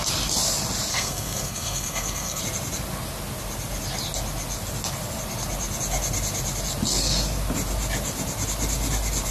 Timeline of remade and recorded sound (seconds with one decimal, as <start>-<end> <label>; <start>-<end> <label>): 0.0-0.9 recorded; 0.9-2.4 remade; 2.4-9.3 recorded